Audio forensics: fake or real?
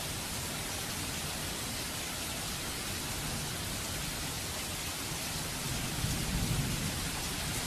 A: real